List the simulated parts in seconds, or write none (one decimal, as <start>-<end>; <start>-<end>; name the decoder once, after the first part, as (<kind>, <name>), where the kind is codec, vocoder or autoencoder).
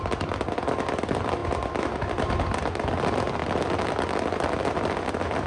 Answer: none